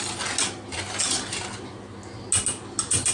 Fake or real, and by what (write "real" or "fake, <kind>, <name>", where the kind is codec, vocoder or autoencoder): real